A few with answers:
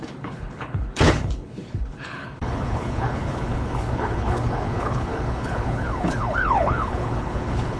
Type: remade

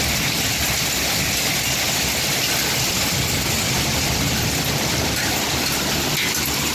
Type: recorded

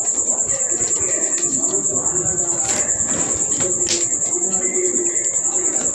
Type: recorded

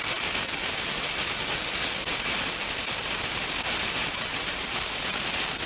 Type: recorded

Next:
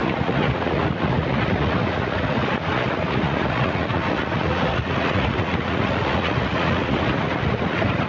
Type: remade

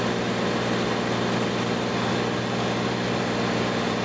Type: recorded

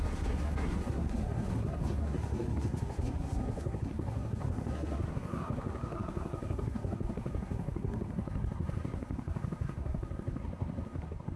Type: remade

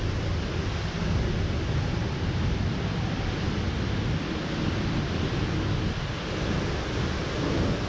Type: recorded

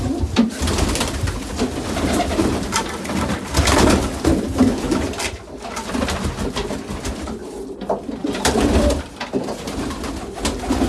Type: recorded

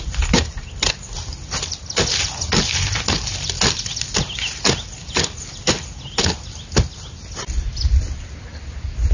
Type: recorded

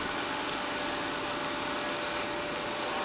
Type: recorded